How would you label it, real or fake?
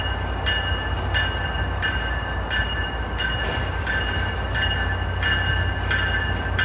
real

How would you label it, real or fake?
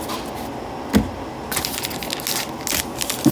real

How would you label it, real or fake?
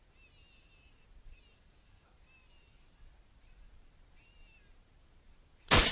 real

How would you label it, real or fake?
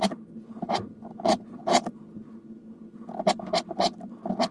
real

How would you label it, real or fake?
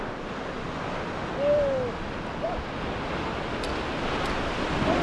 real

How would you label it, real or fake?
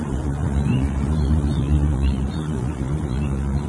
fake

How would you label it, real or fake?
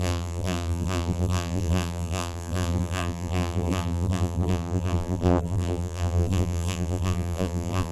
fake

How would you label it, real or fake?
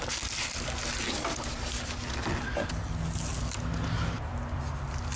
real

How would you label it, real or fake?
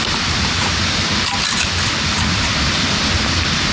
real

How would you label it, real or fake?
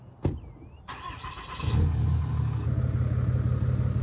real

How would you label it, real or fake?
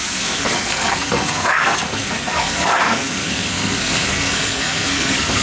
fake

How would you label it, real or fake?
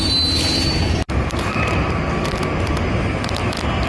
real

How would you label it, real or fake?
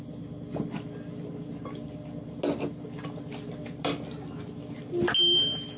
real